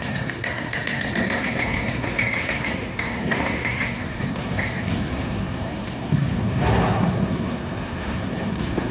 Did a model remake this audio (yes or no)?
yes